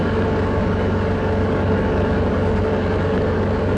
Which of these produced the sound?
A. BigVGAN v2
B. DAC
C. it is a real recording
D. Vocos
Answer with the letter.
B